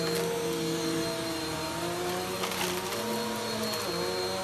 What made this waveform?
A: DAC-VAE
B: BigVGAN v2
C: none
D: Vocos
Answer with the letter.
C